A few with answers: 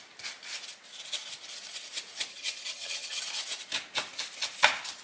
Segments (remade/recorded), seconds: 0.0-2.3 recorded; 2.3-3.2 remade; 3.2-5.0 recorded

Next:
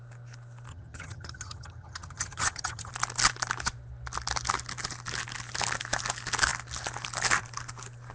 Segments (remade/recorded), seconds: 0.0-0.7 recorded; 0.7-2.9 remade; 2.9-8.1 recorded

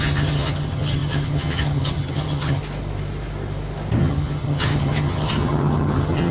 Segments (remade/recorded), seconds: 0.0-2.6 remade; 2.6-4.0 recorded; 4.0-6.3 remade

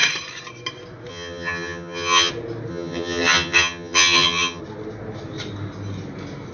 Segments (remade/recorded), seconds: 0.0-1.1 recorded; 1.1-2.3 remade; 2.3-2.7 recorded; 2.7-4.6 remade; 4.6-6.5 recorded

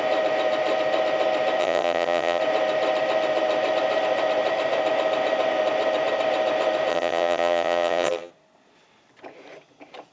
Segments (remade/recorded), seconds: 0.0-1.6 recorded; 1.6-2.4 remade; 2.4-6.9 recorded; 6.9-8.3 remade; 8.3-10.1 recorded

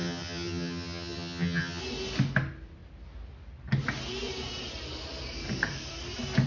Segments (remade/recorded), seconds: 0.0-1.8 remade; 1.8-6.5 recorded